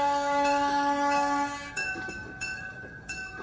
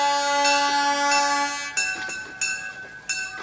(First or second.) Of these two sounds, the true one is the second